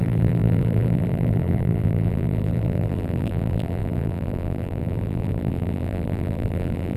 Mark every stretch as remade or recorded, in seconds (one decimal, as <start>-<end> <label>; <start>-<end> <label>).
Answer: 0.0-7.0 remade